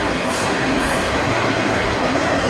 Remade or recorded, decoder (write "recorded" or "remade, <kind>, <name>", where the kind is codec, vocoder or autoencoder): remade, codec, SNAC